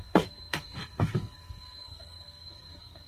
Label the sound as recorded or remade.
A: remade